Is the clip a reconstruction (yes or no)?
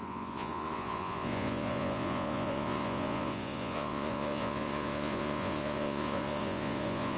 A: yes